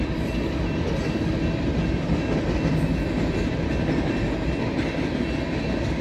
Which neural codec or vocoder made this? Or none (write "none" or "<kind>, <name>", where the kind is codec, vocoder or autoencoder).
none